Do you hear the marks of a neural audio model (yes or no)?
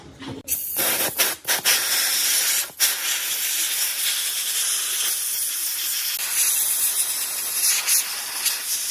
no